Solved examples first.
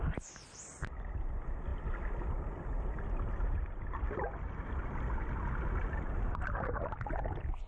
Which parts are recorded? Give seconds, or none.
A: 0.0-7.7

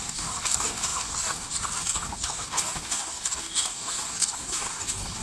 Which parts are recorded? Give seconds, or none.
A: none